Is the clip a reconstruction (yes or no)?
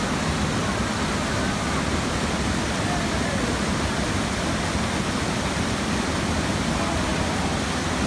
no